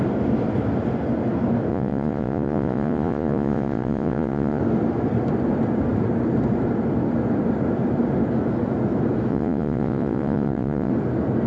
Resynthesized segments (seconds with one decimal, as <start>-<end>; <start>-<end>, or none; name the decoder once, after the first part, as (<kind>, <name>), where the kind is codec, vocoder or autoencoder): 1.7-4.6 (vocoder, Vocos); 9.3-10.9